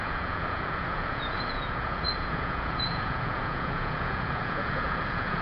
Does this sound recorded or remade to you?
remade